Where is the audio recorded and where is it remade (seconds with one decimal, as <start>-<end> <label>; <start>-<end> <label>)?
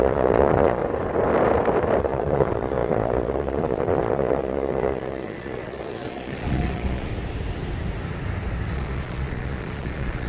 0.0-0.8 remade; 0.8-2.0 recorded; 2.0-7.1 remade; 7.1-8.7 recorded; 8.7-10.3 remade